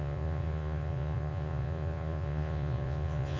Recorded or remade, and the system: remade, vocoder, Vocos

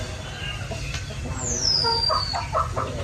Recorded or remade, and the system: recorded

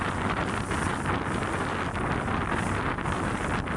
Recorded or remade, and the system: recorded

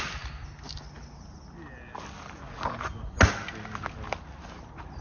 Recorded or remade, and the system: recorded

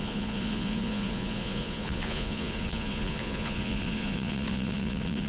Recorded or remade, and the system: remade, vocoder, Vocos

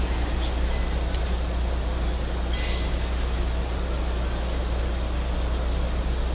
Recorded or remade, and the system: recorded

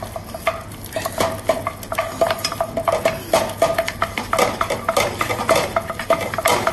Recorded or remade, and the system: recorded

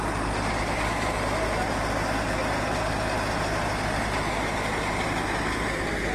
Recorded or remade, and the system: recorded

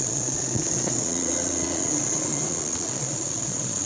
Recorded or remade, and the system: remade, vocoder, Vocos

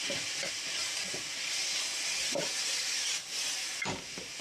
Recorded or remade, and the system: recorded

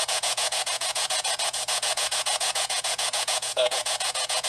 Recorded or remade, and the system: remade, vocoder, Vocos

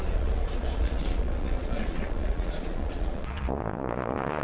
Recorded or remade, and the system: remade, vocoder, Vocos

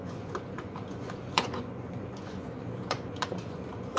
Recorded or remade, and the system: remade, vocoder, Vocos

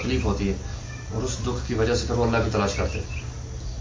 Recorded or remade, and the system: recorded